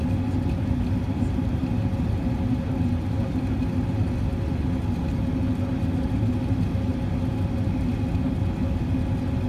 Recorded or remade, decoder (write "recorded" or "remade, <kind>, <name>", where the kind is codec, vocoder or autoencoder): recorded